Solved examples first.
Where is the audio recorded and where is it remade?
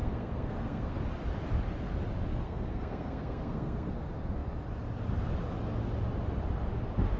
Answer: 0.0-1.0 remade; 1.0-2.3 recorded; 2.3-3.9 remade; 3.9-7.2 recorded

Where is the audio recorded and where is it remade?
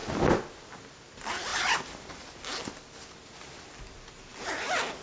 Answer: 0.0-5.0 recorded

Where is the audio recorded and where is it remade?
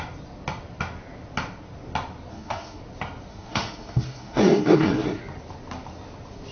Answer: 0.0-2.3 recorded; 2.3-2.8 remade; 2.8-3.3 recorded; 3.3-5.2 remade; 5.2-6.5 recorded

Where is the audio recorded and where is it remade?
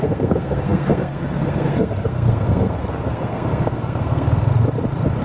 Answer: 0.0-4.5 remade; 4.5-5.2 recorded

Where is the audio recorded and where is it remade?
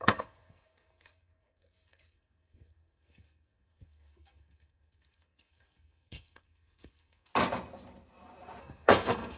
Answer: 0.0-7.3 remade; 7.3-8.6 recorded; 8.6-9.4 remade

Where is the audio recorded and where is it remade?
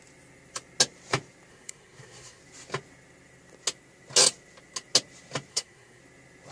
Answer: 0.0-1.5 recorded; 1.5-2.4 remade; 2.4-5.5 recorded; 5.5-6.0 remade; 6.0-6.5 recorded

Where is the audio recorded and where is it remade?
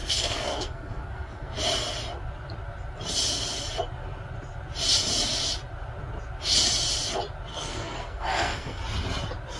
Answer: 0.0-1.6 remade; 1.6-7.5 recorded; 7.5-8.8 remade; 8.8-9.6 recorded